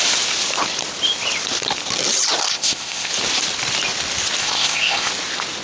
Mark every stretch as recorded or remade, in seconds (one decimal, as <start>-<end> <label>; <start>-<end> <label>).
0.0-2.5 recorded; 2.5-3.1 remade; 3.1-4.4 recorded; 4.4-5.1 remade; 5.1-5.6 recorded